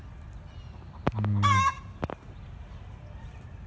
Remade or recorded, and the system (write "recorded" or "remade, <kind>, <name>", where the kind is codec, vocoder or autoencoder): recorded